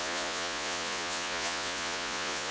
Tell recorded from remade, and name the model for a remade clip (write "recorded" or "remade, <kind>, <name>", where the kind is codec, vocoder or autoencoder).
remade, vocoder, Vocos